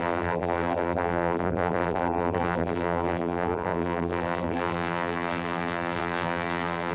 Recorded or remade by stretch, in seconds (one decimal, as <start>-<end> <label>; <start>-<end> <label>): 0.0-6.9 remade